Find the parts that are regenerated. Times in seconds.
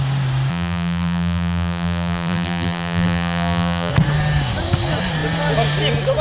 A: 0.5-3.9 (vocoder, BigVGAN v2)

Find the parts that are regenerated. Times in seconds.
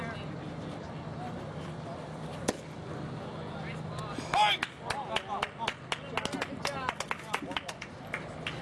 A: none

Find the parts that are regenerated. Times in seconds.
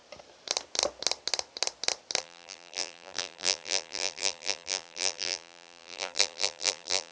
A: 2.2-7.1 (vocoder, BigVGAN v2)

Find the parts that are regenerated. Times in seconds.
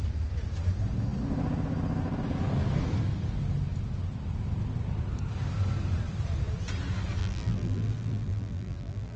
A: 7.2-9.2 (vocoder, BigVGAN v2)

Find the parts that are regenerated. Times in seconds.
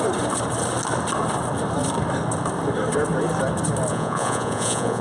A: 3.9-5.0 (vocoder, Vocos)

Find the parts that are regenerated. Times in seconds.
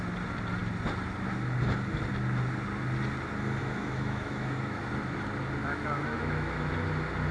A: 3.6-4.9 (autoencoder, DAC-VAE); 5.6-6.7